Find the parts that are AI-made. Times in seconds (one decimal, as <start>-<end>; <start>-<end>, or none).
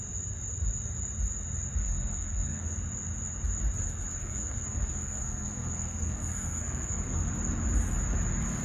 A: 1.8-2.8; 4.2-7.3